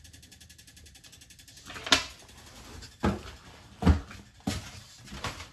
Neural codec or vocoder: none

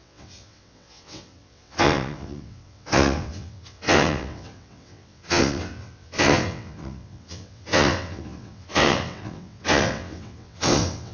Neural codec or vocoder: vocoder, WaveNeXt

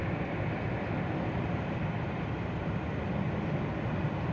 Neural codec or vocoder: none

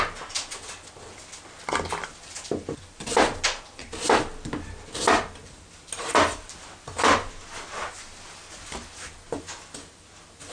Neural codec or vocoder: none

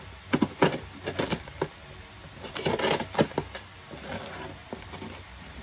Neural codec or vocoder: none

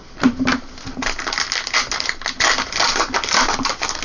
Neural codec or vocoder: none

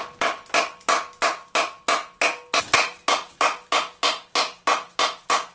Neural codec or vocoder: none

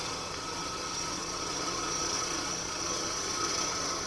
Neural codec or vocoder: vocoder, Vocos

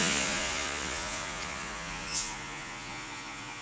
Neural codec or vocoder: vocoder, Vocos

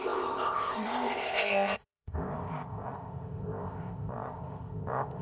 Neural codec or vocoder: codec, ZipCodec